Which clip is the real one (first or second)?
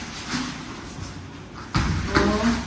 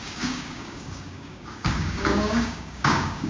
first